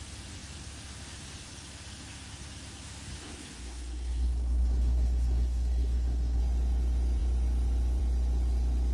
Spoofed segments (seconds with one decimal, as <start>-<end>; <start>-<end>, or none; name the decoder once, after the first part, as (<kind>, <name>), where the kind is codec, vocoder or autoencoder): 3.2-6.4 (codec, SNAC)